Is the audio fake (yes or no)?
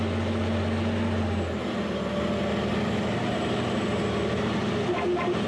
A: no